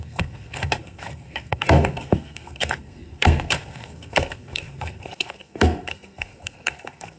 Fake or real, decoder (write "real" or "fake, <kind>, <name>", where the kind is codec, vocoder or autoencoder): fake, codec, SNAC